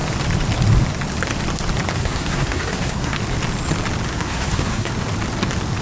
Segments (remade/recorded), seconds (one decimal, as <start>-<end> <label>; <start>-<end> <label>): 0.0-2.0 recorded; 2.0-3.2 remade; 3.2-4.1 recorded; 4.1-4.9 remade; 4.9-5.8 recorded